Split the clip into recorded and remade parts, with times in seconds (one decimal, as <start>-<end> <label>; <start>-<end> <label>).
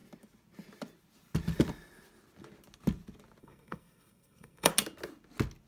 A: 0.0-3.4 recorded; 3.4-4.7 remade; 4.7-5.7 recorded